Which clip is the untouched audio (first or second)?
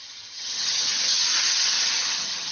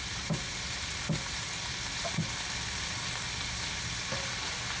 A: second